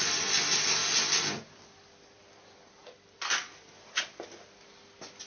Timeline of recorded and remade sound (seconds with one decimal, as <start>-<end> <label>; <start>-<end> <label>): 0.0-5.3 recorded